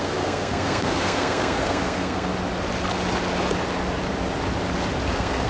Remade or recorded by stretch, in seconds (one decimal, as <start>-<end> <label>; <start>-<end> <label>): 0.0-2.3 remade; 2.3-5.1 recorded; 5.1-5.5 remade